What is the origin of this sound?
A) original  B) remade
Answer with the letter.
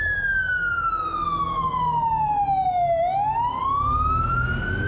A